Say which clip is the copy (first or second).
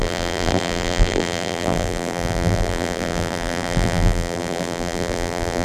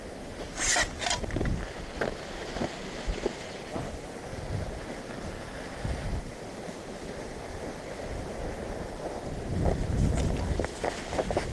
first